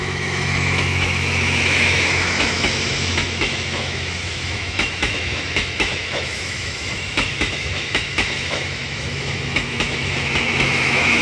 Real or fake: fake